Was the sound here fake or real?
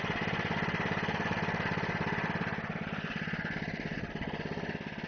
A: real